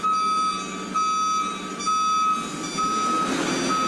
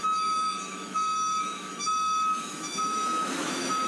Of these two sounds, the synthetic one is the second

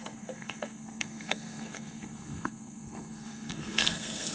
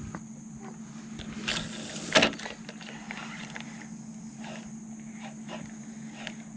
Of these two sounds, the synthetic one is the first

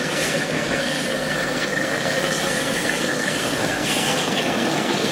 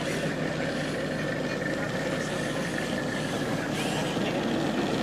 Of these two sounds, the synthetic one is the first